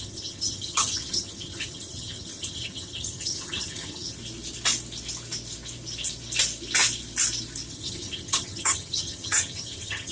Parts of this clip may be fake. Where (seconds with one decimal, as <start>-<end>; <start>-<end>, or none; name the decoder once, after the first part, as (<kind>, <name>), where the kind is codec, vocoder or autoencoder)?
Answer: 0.0-4.2 (vocoder, HiFi-GAN); 7.7-10.1